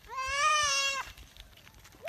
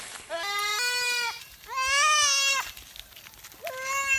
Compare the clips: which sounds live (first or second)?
second